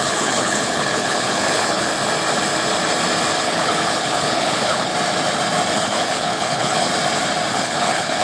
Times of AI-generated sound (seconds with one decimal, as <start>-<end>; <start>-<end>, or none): 0.0-1.9; 3.4-4.9; 5.7-6.9; 7.5-8.2